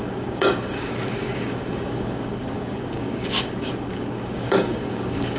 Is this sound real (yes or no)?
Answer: no